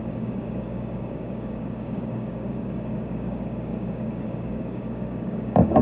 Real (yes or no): no